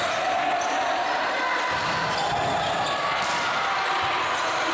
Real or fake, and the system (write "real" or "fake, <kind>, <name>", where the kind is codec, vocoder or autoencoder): real